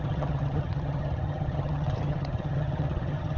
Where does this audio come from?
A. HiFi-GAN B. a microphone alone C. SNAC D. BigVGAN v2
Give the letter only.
A